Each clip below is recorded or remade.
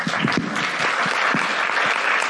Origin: recorded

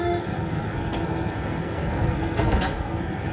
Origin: remade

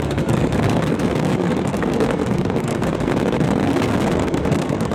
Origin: remade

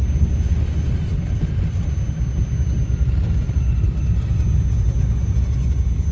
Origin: recorded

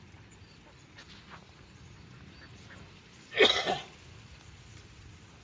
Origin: recorded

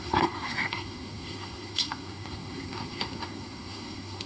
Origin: remade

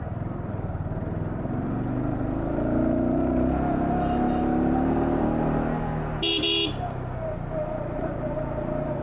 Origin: recorded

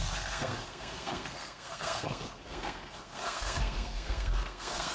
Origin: remade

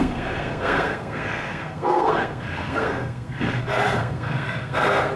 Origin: remade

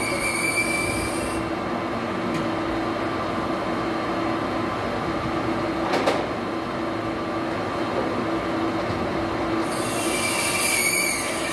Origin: recorded